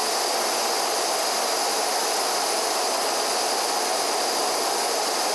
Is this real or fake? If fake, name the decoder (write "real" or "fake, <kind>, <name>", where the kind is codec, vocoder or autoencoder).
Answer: real